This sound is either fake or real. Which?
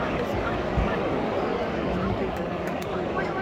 fake